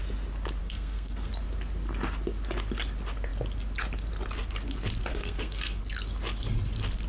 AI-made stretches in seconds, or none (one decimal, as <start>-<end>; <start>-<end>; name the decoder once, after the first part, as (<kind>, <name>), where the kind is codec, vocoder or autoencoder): 0.6-1.3 (codec, SNAC); 5.1-5.8